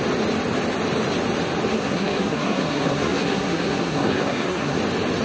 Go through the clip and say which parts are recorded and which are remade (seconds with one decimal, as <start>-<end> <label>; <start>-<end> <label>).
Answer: 0.0-1.7 recorded; 1.7-4.8 remade; 4.8-5.2 recorded